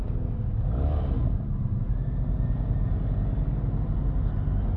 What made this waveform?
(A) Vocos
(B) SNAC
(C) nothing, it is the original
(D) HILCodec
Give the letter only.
C